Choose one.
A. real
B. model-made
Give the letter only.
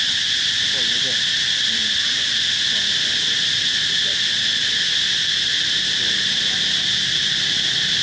A